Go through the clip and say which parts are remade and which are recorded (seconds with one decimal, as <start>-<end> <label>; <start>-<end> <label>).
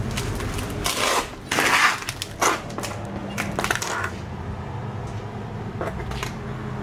0.0-3.2 recorded; 3.2-4.7 remade; 4.7-6.8 recorded